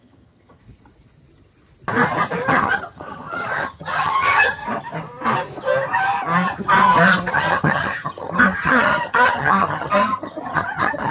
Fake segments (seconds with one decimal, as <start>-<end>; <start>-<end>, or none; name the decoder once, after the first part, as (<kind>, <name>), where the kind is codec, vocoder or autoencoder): 0.0-0.6 (vocoder, HiFi-GAN); 2.5-4.6; 7.3-11.1